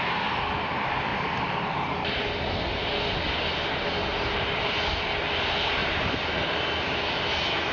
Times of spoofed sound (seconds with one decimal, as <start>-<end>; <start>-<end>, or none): 1.1-1.7; 4.1-4.9; 5.8-6.4